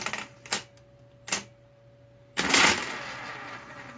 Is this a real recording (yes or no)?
yes